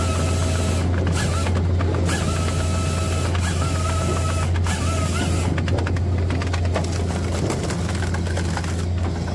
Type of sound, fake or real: real